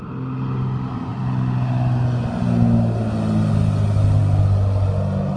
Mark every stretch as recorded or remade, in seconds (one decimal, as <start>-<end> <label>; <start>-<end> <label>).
0.0-5.4 recorded